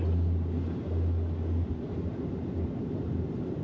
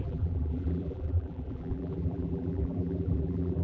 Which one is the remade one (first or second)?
second